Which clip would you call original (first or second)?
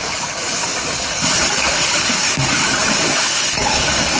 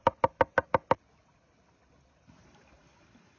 second